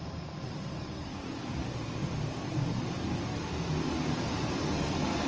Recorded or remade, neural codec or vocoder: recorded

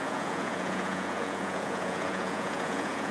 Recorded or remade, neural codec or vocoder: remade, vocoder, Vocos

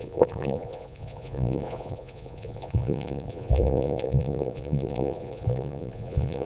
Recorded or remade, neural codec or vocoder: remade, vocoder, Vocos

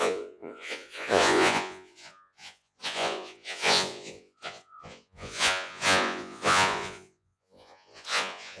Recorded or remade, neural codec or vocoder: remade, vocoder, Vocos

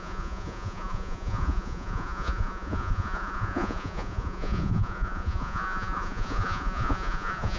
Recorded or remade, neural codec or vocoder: remade, vocoder, Vocos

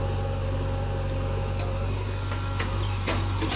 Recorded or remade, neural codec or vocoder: recorded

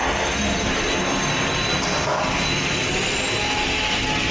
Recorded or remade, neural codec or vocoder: recorded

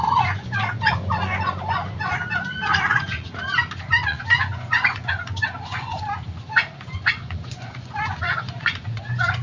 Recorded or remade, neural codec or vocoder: remade, vocoder, Vocos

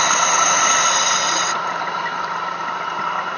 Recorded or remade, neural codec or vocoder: recorded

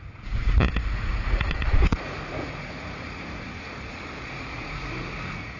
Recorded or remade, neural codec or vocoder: remade, vocoder, Vocos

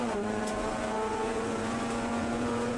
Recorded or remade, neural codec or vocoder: remade, vocoder, Vocos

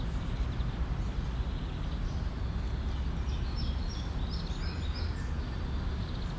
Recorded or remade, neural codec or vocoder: recorded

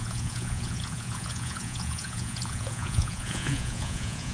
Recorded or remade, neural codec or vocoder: remade, vocoder, Vocos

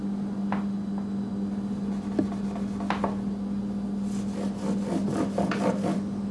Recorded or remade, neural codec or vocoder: recorded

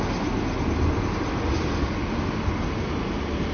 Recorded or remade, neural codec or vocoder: recorded